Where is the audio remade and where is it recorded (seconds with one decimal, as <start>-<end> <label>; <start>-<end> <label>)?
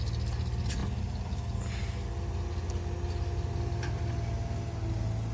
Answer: 0.0-5.3 recorded